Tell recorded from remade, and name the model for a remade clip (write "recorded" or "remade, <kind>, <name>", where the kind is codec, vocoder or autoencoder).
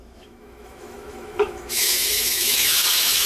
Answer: remade, autoencoder, DAC-VAE